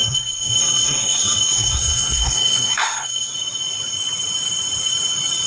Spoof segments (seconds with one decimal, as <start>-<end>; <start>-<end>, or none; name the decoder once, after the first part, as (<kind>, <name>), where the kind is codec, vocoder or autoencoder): 0.0-3.3 (codec, SNAC)